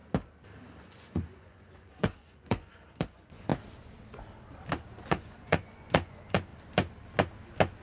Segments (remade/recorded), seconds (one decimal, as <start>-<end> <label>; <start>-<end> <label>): 0.0-0.8 recorded; 0.8-3.5 remade; 3.5-5.1 recorded; 5.1-6.5 remade; 6.5-7.8 recorded